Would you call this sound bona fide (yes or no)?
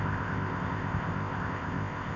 no